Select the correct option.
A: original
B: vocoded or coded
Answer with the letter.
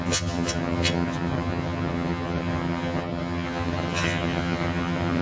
B